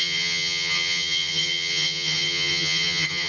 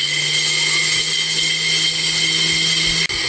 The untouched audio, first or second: second